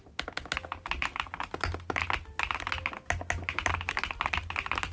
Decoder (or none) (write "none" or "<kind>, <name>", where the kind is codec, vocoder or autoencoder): none